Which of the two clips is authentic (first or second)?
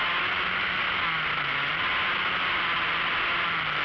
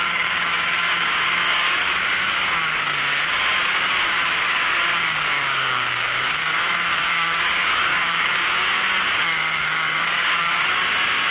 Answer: first